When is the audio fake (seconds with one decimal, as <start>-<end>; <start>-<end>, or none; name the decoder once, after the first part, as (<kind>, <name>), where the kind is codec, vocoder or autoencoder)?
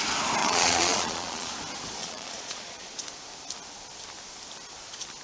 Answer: 0.4-1.5 (vocoder, Vocos); 2.0-2.9